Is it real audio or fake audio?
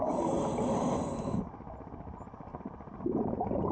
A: real